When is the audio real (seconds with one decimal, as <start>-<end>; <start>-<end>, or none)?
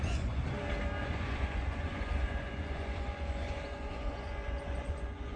0.4-1.0